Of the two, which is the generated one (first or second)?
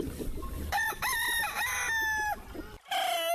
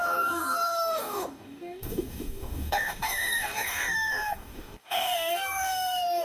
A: second